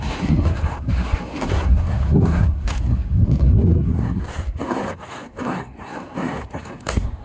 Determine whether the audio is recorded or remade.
remade